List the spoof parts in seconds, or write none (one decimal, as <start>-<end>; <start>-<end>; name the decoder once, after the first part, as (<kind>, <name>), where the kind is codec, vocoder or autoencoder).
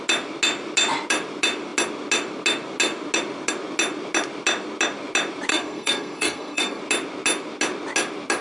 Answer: 5.5-6.8 (codec, SNAC)